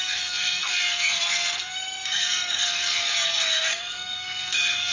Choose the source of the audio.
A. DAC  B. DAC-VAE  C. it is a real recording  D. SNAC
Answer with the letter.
D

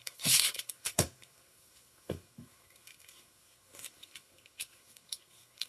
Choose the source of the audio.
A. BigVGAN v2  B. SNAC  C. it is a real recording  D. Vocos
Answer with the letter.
B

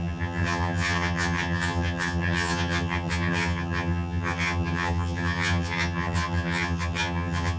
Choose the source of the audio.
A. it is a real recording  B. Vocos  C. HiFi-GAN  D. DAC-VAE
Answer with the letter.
C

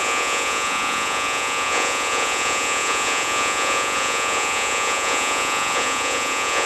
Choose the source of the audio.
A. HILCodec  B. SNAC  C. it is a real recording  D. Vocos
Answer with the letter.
D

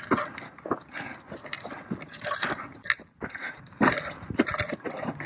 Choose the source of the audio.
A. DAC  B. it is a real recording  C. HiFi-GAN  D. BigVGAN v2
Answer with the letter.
B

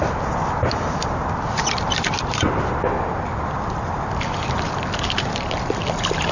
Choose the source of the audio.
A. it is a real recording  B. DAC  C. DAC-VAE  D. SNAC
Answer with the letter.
A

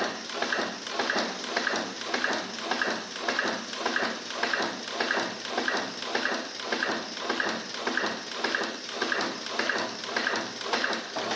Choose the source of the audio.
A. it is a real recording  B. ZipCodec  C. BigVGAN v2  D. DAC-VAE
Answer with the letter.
A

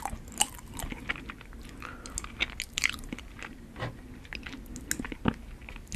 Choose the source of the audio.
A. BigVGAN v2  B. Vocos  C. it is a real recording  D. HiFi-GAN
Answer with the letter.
C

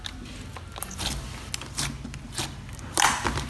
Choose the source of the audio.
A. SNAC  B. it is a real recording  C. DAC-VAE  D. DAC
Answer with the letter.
B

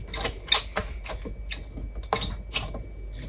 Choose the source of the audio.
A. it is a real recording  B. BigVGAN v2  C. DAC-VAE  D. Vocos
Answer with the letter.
A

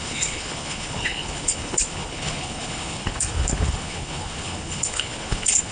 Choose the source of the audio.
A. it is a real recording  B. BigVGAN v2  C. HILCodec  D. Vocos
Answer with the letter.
C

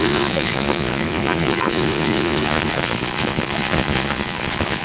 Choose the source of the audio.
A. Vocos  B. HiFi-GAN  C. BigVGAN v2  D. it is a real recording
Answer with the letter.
A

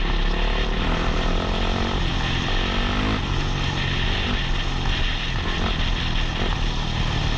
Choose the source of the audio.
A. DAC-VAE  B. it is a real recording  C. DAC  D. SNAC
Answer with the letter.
B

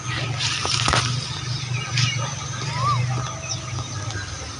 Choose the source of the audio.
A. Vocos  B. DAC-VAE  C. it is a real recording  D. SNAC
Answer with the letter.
C